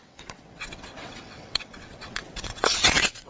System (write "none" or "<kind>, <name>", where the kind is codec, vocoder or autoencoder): vocoder, WaveNeXt